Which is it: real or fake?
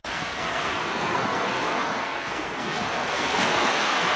fake